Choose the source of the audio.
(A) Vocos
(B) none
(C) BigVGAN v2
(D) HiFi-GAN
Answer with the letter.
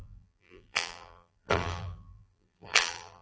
C